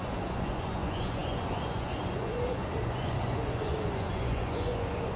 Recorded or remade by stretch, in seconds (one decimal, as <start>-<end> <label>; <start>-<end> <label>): 0.0-5.2 remade